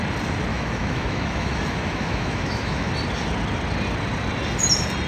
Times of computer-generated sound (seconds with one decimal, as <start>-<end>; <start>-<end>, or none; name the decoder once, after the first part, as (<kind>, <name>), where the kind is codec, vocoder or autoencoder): 0.5-2.9 (autoencoder, DAC-VAE)